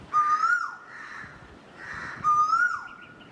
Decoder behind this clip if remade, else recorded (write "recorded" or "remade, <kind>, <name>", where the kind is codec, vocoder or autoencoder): recorded